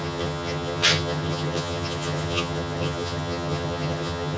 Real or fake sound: fake